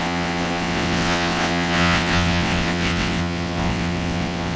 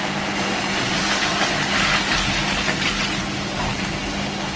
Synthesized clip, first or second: first